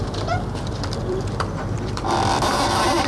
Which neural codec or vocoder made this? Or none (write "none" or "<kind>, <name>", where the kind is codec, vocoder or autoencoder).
vocoder, BigVGAN v2